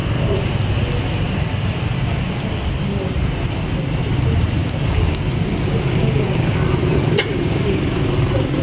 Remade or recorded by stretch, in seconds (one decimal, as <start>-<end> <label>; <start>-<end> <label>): 0.0-4.6 recorded; 4.6-6.6 remade; 6.6-7.3 recorded; 7.3-8.0 remade; 8.0-8.6 recorded